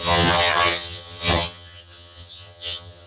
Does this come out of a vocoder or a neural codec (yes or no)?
yes